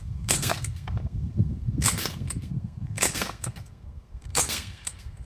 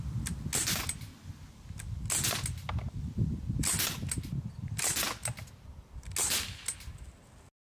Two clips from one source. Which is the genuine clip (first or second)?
second